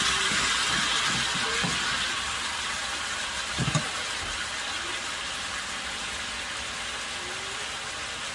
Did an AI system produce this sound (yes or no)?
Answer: no